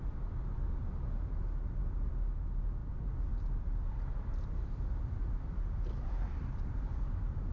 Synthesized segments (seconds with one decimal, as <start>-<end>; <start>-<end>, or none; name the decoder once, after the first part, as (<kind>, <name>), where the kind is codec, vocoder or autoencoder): 2.8-7.5 (vocoder, BigVGAN v2)